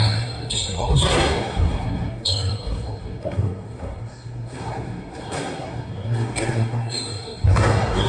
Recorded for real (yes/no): no